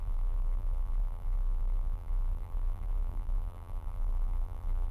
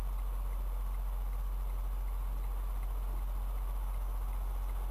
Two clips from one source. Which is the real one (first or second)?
second